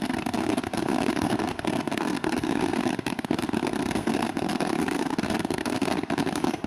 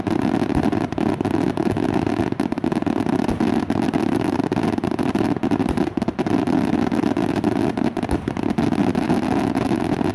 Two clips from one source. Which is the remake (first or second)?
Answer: first